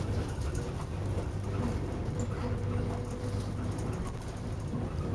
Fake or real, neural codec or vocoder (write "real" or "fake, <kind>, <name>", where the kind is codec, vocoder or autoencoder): real